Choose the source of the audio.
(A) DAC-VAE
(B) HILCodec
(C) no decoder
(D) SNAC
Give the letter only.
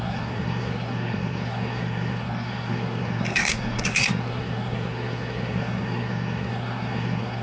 D